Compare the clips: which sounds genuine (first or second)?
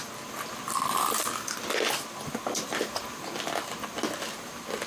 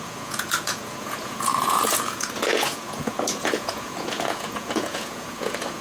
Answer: first